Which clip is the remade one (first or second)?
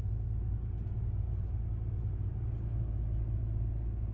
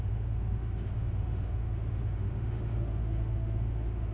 second